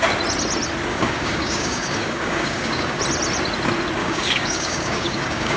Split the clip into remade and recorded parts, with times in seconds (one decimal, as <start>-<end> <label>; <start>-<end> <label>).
0.0-0.9 recorded; 0.9-3.0 remade; 3.0-4.0 recorded; 4.0-5.6 remade